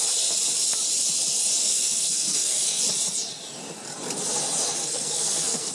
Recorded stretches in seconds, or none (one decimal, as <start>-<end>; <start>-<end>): 0.0-1.6; 2.8-4.8